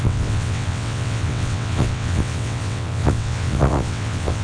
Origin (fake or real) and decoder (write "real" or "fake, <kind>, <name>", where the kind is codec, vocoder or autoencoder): fake, vocoder, WaveNeXt